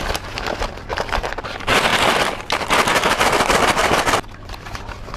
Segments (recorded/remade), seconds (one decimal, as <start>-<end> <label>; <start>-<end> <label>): 0.0-0.9 recorded; 0.9-1.4 remade; 1.4-3.8 recorded; 3.8-4.7 remade; 4.7-5.2 recorded